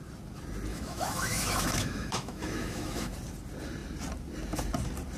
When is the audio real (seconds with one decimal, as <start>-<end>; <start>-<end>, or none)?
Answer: 0.0-0.7; 3.1-5.2